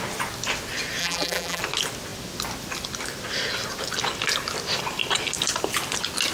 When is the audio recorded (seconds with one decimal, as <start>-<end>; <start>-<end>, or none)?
0.0-1.0; 1.6-6.3